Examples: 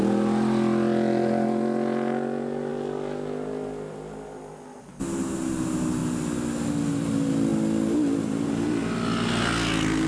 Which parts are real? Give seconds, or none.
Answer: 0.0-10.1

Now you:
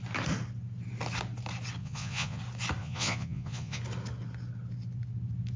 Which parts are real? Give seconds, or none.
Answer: 0.0-1.8; 2.4-2.8; 3.8-5.6